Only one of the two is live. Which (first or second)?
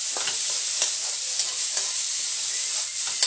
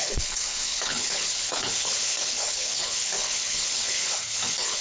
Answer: first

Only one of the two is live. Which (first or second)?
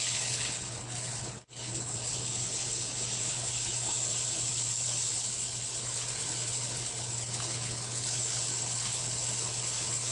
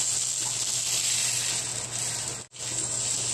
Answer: second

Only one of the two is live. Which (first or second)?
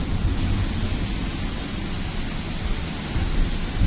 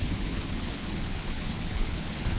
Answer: first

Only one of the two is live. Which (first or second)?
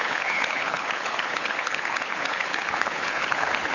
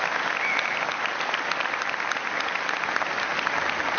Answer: second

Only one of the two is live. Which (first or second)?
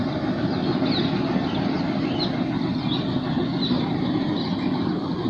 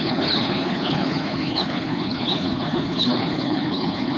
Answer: first